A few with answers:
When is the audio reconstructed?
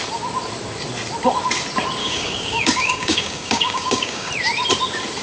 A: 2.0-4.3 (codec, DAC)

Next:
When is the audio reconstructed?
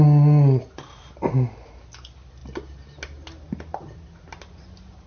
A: none